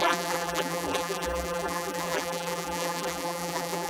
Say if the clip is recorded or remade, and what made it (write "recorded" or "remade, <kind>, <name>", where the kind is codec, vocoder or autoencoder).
remade, vocoder, BigVGAN v2